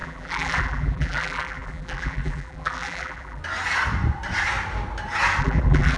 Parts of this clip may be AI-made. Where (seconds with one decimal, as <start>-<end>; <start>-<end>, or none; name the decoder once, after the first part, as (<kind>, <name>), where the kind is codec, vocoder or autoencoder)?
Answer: 0.0-3.4 (vocoder, BigVGAN v2); 5.4-6.0